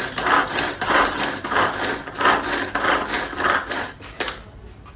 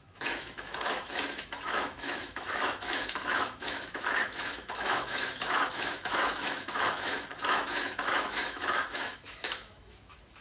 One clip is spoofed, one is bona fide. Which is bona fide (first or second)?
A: first